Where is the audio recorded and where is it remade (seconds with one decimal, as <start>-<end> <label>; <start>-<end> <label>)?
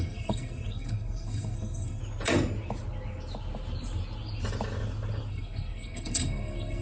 0.0-2.0 remade; 2.0-5.3 recorded; 5.3-6.8 remade